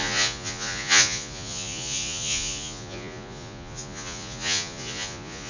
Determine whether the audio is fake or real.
fake